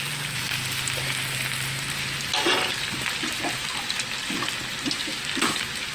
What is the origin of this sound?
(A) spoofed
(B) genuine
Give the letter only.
B